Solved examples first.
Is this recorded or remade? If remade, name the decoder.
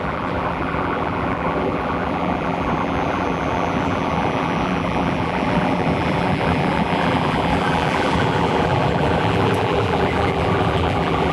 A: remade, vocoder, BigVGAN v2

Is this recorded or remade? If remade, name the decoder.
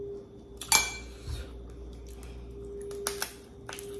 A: recorded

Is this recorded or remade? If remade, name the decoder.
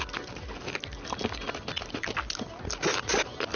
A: recorded